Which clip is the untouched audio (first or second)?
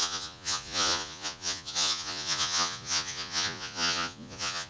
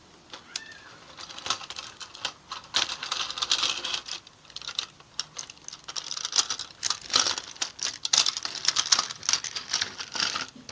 second